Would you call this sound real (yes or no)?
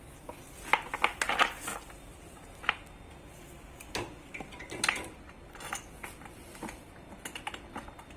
yes